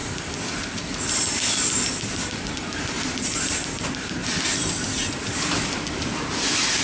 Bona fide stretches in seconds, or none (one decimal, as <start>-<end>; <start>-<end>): 2.5-4.2; 6.2-6.8